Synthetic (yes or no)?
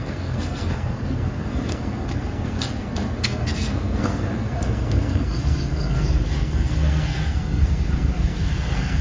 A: yes